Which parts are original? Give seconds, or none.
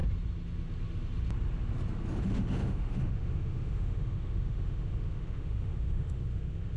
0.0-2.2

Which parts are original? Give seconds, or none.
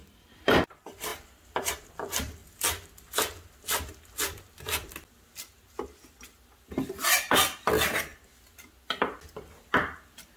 0.6-1.1; 1.9-10.4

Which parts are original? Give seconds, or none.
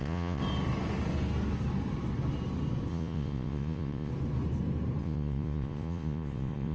0.4-2.9; 4.1-5.0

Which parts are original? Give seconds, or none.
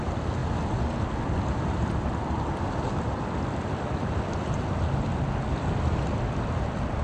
0.0-7.0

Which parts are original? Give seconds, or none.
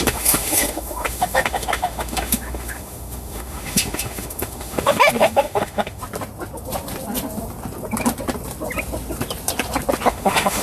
6.0-10.1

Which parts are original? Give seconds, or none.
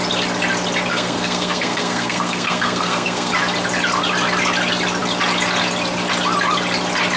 0.0-0.9; 3.3-7.2